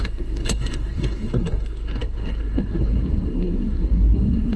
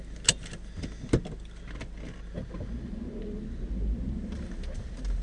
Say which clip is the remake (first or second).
first